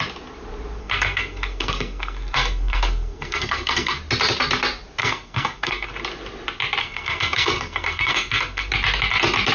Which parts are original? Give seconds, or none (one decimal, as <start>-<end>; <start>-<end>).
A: 0.0-0.8; 4.0-5.0; 5.9-6.8; 8.7-9.5